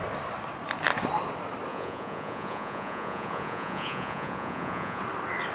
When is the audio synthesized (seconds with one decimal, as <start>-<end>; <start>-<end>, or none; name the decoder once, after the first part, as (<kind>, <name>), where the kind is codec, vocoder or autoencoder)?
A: 1.7-5.0 (vocoder, Vocos)